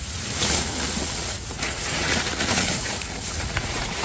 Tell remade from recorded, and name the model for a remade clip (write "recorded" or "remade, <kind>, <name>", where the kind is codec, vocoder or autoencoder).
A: remade, vocoder, Vocos